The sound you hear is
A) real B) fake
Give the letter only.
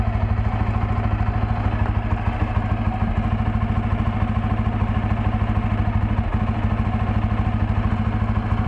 A